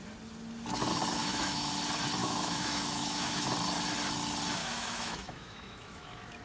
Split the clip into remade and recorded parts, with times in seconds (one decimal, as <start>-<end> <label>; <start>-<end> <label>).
0.0-1.2 recorded; 1.2-1.7 remade; 1.7-2.2 recorded; 2.2-3.5 remade; 3.5-4.6 recorded; 4.6-6.4 remade